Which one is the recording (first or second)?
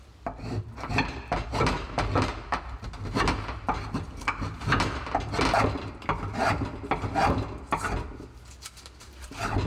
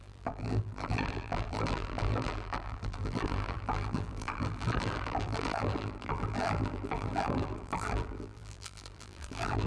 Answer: first